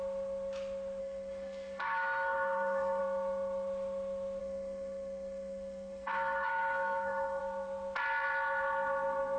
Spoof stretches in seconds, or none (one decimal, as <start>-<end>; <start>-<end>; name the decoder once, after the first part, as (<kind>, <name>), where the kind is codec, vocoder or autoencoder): 1.0-3.0 (codec, SNAC); 4.4-7.4